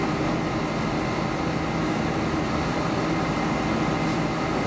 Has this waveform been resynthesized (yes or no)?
no